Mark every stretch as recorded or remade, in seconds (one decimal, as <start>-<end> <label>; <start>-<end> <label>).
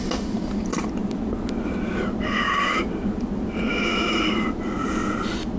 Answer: 0.0-3.7 recorded; 3.7-4.2 remade; 4.2-5.6 recorded